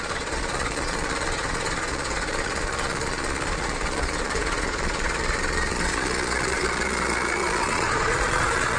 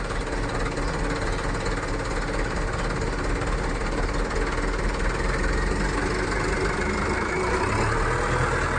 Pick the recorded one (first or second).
second